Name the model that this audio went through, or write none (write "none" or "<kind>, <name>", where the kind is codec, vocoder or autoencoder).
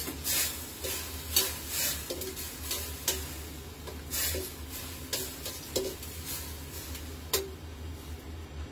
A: none